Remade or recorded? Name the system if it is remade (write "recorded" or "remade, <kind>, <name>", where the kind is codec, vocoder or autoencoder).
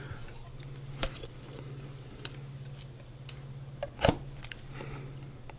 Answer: recorded